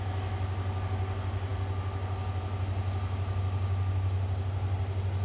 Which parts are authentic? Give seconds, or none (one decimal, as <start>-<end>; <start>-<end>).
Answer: 0.0-5.2